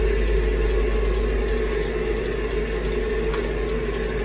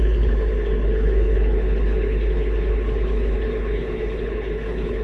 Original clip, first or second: first